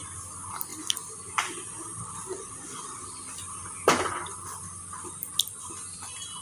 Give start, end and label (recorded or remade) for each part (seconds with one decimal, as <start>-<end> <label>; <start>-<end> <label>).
0.0-0.7 recorded; 0.7-1.3 remade; 1.3-1.9 recorded; 1.9-5.3 remade; 5.3-6.4 recorded